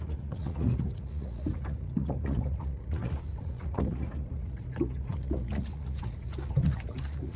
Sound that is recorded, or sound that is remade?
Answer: remade